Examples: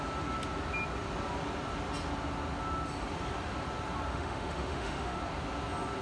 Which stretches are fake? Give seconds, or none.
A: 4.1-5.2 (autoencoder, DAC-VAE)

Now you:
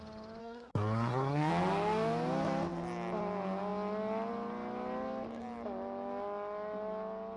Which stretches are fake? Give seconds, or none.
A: 0.4-1.5 (codec, SNAC)